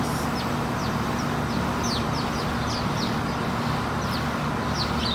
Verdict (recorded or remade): recorded